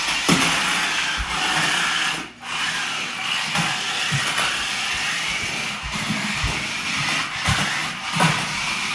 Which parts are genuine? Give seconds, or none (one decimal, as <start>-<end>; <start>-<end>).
0.0-8.9